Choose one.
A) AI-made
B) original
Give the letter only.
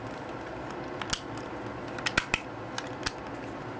B